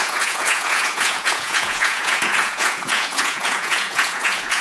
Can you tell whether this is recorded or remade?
remade